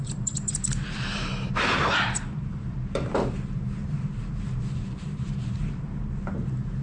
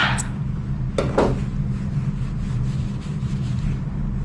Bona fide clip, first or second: second